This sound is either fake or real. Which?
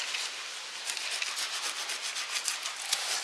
real